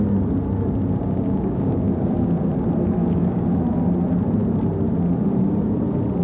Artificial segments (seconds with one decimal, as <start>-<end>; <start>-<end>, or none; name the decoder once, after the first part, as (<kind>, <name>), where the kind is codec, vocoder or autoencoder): 1.0-2.5 (codec, DAC); 3.0-3.6